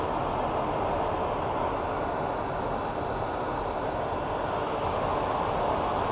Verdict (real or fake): real